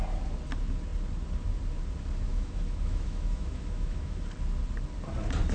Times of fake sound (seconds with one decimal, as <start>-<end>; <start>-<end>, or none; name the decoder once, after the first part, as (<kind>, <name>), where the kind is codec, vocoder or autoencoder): 2.3-4.2 (autoencoder, DAC-VAE)